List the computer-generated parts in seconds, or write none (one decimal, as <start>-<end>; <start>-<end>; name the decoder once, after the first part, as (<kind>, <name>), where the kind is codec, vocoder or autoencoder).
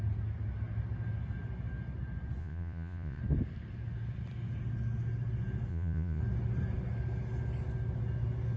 2.4-3.2 (vocoder, Vocos); 5.7-6.2